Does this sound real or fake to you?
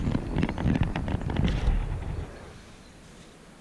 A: real